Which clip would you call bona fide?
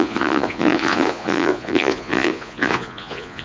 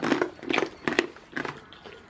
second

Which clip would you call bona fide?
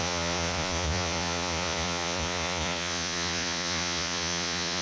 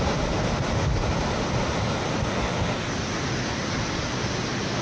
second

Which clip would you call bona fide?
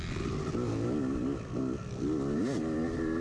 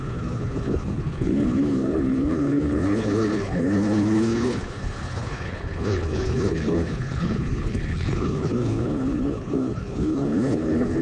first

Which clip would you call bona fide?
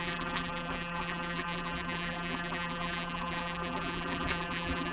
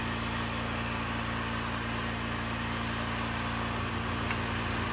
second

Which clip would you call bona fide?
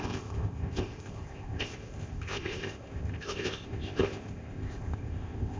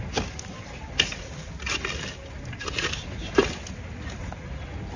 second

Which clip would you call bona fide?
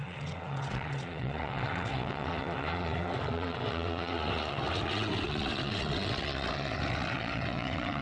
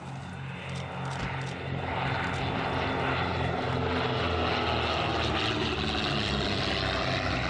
second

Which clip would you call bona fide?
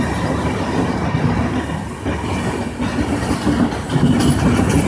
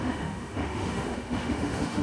first